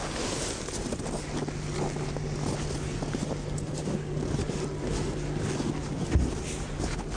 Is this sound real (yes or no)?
yes